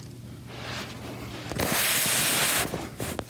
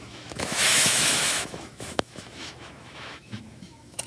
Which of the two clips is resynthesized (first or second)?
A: second